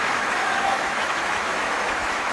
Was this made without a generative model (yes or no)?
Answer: no